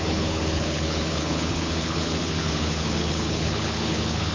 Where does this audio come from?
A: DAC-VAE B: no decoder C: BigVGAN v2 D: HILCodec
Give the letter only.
D